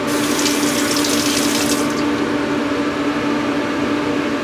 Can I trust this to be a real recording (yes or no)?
yes